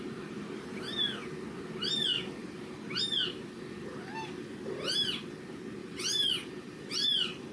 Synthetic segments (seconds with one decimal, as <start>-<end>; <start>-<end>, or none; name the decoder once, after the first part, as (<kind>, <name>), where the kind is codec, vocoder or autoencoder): 2.1-3.0 (vocoder, BigVGAN v2); 5.8-7.5

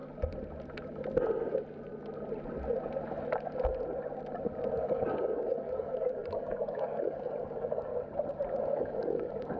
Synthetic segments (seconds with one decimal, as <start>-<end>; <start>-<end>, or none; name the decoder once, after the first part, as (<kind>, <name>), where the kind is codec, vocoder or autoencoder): 4.7-7.9 (codec, DAC); 8.6-9.6

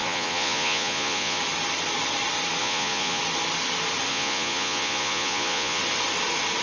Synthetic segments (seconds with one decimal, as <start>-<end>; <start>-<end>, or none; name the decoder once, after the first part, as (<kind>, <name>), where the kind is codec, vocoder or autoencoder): 0.0-1.4 (vocoder, Vocos); 2.6-3.2; 4.1-5.8

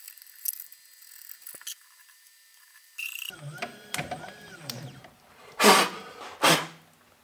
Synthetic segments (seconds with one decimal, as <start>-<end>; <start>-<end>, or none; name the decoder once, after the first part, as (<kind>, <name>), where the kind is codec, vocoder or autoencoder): 1.7-5.5 (vocoder, BigVGAN v2)

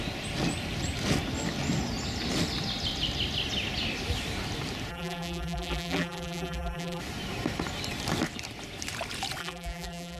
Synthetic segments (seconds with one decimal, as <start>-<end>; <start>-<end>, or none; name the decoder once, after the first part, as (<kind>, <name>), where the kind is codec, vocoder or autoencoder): 4.9-7.0 (vocoder, BigVGAN v2); 9.4-10.2

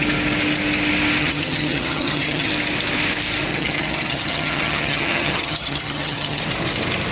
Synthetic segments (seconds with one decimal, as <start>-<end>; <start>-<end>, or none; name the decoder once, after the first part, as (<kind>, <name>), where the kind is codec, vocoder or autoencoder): 1.2-2.5 (vocoder, HiFi-GAN); 3.5-6.4

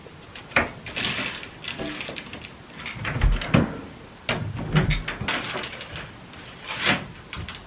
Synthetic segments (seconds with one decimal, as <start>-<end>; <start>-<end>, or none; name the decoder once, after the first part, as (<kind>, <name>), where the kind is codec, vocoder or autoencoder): none